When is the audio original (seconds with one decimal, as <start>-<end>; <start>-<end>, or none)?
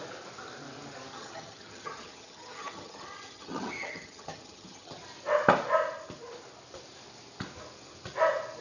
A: 0.0-1.1; 5.0-8.6